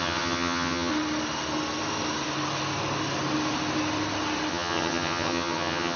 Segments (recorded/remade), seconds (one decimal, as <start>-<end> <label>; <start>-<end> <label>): 0.0-0.9 remade; 0.9-4.5 recorded; 4.5-6.0 remade